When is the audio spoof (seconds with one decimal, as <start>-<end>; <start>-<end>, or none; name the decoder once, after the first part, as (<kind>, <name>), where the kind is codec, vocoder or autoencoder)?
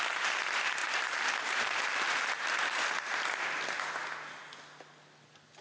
0.8-2.8 (vocoder, BigVGAN v2)